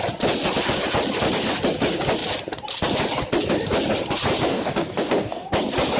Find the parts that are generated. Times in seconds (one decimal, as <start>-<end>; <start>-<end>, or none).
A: 4.5-5.5